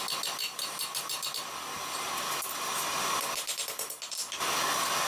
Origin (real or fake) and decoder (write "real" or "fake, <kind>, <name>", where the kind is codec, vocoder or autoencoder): real